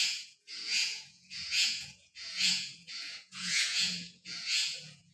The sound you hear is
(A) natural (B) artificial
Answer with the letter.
B